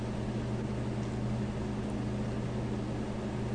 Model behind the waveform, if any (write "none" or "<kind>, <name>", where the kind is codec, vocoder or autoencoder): none